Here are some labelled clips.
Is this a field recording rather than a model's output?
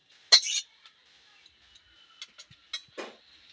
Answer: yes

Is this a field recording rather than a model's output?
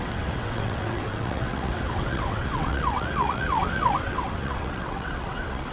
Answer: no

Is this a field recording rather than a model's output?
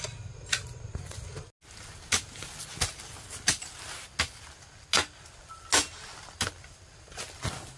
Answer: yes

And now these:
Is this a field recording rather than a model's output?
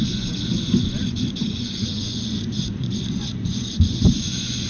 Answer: no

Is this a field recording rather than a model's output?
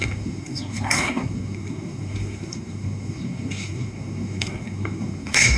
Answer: no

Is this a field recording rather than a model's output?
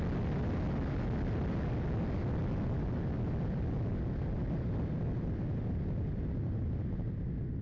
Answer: yes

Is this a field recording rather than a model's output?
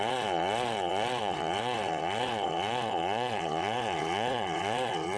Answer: no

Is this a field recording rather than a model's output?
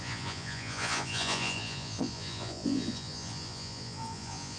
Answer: no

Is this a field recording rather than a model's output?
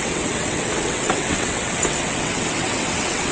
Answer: no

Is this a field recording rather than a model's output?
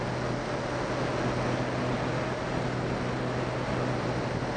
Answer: yes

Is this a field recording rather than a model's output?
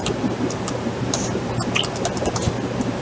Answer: yes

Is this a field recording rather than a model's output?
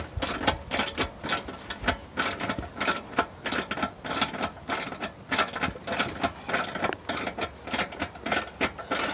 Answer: yes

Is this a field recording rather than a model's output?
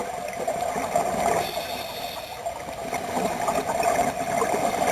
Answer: yes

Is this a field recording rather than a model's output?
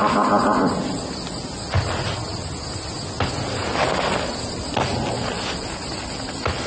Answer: yes